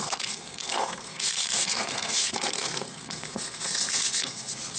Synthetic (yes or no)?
yes